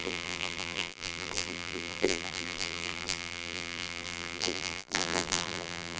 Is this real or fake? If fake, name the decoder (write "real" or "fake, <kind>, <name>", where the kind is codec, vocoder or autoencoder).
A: fake, vocoder, BigVGAN v2